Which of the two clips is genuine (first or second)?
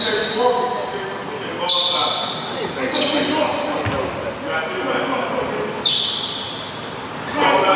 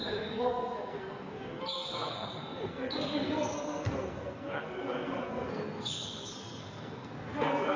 first